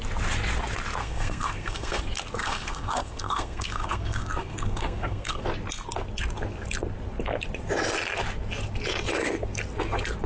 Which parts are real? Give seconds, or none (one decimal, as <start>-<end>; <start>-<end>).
0.0-1.0; 2.0-2.4; 5.4-10.3